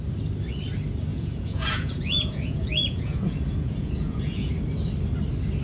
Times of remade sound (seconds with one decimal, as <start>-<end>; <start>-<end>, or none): 1.1-4.5